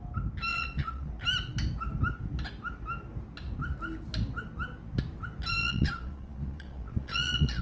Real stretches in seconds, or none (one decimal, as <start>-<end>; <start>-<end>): 0.0-0.5; 1.1-5.6